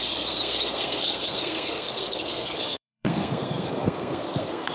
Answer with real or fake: fake